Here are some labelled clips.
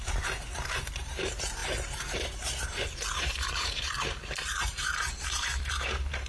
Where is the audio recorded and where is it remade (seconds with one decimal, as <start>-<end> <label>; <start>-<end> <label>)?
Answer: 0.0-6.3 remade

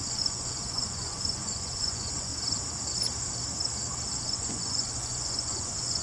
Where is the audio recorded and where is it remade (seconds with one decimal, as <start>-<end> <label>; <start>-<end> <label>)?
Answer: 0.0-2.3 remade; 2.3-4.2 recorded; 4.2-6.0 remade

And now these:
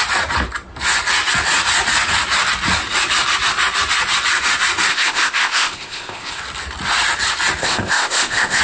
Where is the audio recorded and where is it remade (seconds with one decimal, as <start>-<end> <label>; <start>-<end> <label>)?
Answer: 0.0-4.9 recorded; 4.9-6.4 remade; 6.4-7.6 recorded; 7.6-8.6 remade

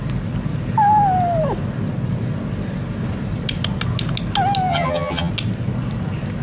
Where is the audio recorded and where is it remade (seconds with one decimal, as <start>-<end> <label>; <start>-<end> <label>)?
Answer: 0.0-4.7 recorded; 4.7-5.3 remade; 5.3-6.4 recorded

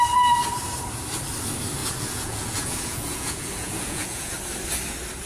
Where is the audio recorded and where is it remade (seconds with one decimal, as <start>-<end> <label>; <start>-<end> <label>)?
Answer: 0.0-1.8 recorded; 1.8-4.3 remade; 4.3-5.3 recorded

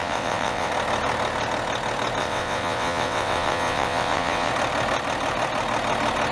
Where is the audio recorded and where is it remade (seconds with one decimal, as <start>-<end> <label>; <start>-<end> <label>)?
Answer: 0.0-0.7 remade; 0.7-2.2 recorded; 2.2-4.5 remade; 4.5-6.3 recorded

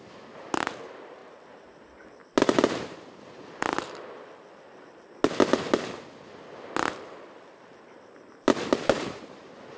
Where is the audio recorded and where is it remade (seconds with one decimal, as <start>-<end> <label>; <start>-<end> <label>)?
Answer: 0.0-9.8 recorded